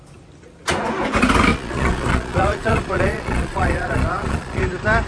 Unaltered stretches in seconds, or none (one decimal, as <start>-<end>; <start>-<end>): 0.0-1.5; 4.6-5.1